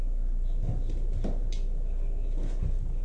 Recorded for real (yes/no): yes